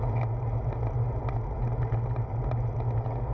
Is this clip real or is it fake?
real